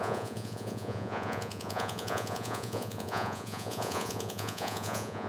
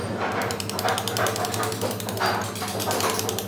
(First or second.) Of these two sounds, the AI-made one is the first